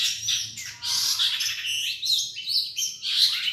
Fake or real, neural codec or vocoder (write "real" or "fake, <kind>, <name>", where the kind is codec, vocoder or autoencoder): real